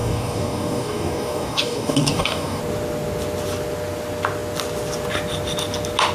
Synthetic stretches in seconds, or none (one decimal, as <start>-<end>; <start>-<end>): 0.0-2.6